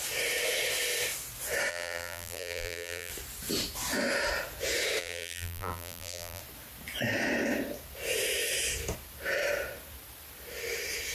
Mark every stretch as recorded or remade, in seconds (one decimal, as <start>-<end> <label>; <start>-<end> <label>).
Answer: 0.0-1.7 recorded; 1.7-3.1 remade; 3.1-5.0 recorded; 5.0-6.4 remade; 6.4-11.1 recorded